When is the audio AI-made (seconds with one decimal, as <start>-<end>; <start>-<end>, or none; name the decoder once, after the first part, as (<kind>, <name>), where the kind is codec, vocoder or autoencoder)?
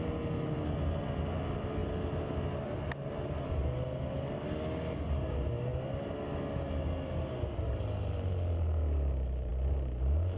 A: none